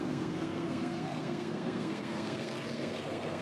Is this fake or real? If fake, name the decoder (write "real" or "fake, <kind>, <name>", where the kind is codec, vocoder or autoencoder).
fake, codec, SNAC